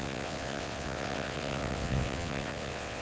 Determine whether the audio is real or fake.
fake